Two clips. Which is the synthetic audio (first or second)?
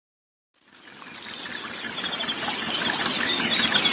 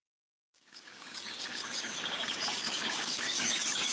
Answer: second